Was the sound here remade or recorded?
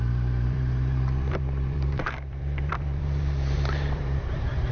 remade